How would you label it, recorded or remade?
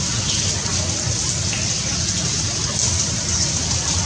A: recorded